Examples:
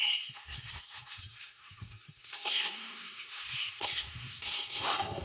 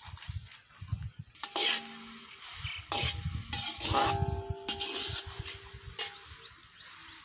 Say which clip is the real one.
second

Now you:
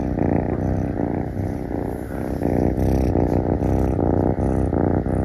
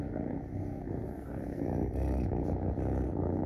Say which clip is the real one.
first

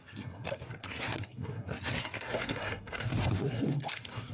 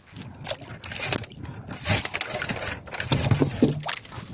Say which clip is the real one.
second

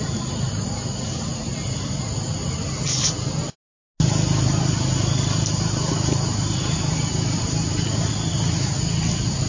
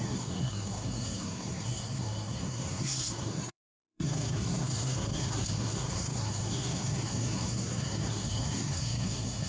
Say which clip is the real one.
first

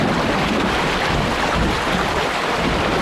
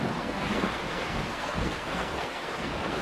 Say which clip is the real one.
first